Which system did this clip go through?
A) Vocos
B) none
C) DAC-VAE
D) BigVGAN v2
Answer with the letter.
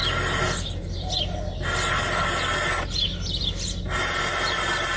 B